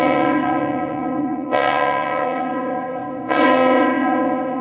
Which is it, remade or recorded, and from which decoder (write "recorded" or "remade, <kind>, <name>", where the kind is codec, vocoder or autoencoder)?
remade, vocoder, WaveNeXt